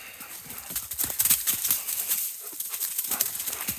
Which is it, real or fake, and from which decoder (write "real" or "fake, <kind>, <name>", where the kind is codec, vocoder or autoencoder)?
real